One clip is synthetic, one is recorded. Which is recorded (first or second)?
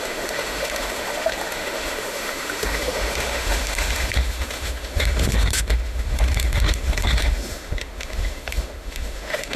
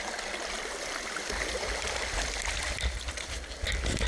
second